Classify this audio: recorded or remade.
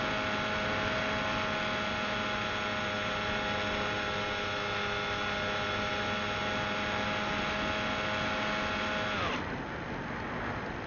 recorded